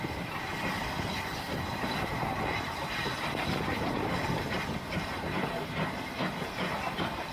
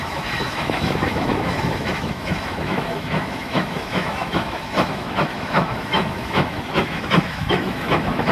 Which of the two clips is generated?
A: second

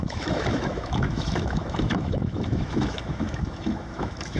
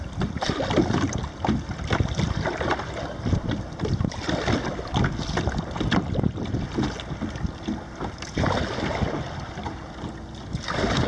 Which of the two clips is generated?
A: first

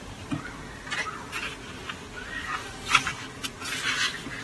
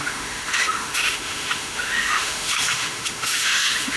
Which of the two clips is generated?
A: second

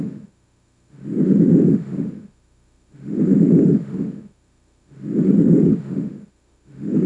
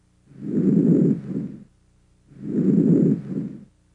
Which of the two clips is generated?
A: first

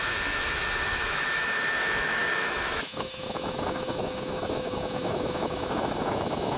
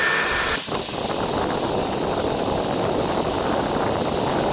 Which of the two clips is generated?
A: first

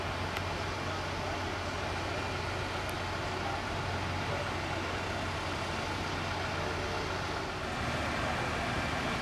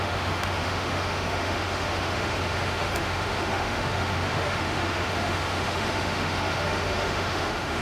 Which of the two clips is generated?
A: second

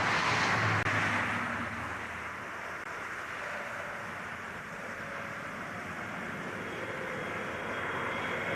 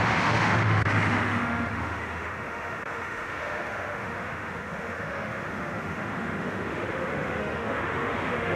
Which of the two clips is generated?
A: second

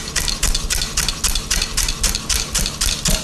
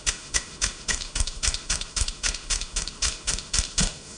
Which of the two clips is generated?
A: second